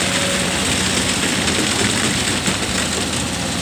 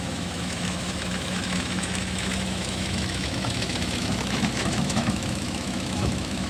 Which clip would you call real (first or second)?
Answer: first